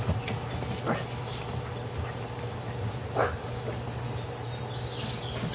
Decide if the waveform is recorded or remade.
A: recorded